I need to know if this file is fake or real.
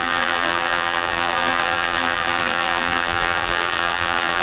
fake